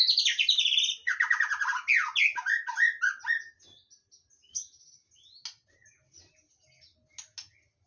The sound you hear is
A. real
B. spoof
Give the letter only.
A